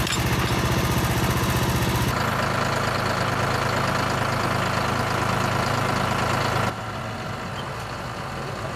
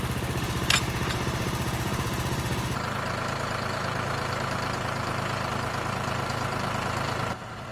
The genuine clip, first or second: first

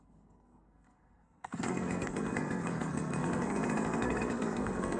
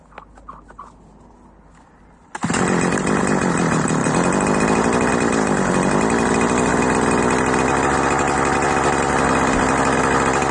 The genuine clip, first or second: second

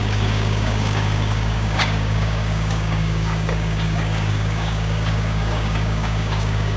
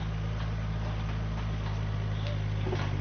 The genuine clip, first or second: second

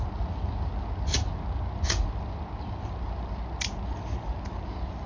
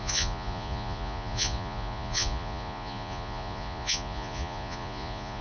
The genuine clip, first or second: first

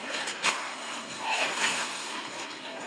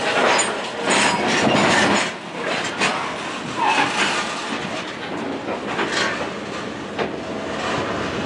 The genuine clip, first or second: second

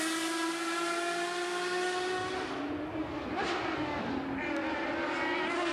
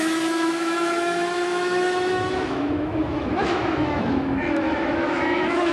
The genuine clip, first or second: first